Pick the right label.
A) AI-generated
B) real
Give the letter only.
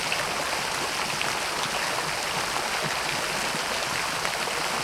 B